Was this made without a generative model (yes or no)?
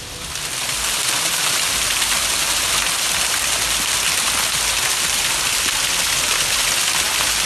yes